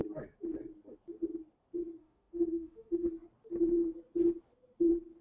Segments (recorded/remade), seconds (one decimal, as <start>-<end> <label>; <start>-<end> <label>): 0.0-2.0 recorded; 2.0-3.1 remade; 3.1-5.2 recorded